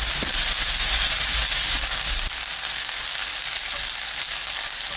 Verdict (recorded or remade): recorded